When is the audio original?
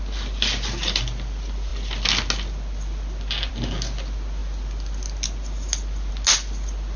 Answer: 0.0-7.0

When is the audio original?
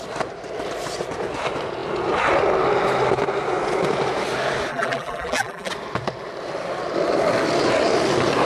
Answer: 0.0-4.7; 5.7-8.5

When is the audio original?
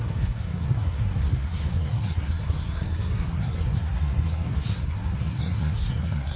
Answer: none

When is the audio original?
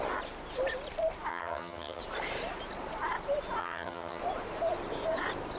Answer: 0.0-1.3; 2.0-3.6; 4.2-5.6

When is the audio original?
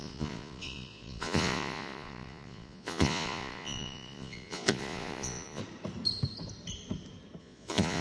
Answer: 5.6-7.4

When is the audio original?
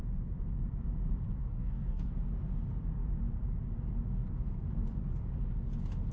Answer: 0.0-1.4; 2.1-6.1